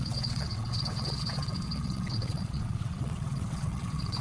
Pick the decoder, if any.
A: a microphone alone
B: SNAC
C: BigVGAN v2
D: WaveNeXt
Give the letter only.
D